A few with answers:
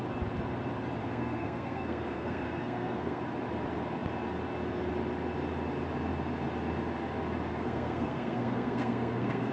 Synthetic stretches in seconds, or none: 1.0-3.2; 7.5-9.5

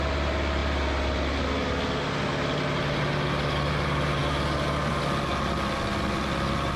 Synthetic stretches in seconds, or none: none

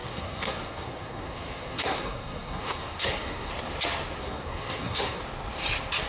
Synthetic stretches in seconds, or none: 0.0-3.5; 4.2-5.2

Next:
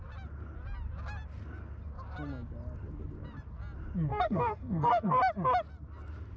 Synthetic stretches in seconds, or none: 4.1-5.2

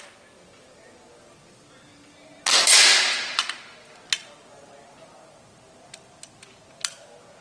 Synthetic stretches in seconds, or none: none